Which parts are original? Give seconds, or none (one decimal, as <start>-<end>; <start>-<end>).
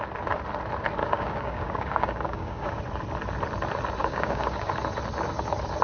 0.0-1.0; 2.8-4.0; 4.7-5.8